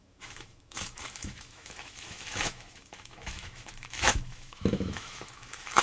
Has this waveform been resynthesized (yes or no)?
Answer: yes